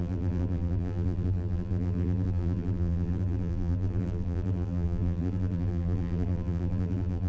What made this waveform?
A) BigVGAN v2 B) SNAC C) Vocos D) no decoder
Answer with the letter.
A